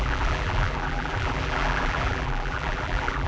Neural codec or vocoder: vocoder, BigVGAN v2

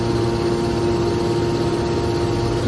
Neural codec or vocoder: none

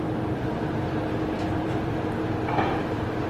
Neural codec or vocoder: vocoder, BigVGAN v2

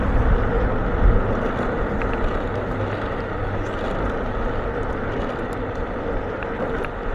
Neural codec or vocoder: none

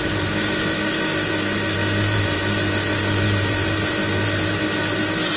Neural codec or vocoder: vocoder, BigVGAN v2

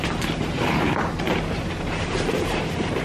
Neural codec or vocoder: vocoder, BigVGAN v2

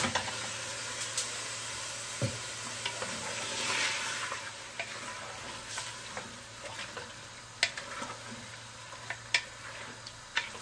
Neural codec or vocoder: none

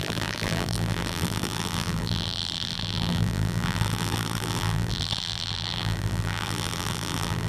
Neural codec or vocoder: vocoder, BigVGAN v2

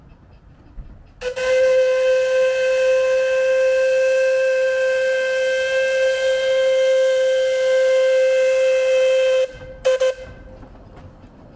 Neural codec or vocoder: none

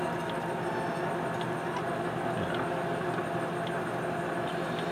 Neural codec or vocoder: none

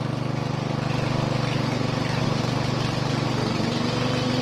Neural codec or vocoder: none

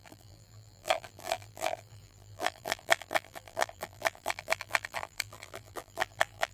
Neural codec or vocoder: vocoder, BigVGAN v2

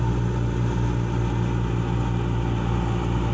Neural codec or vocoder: none